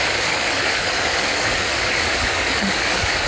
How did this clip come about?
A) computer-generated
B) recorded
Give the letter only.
A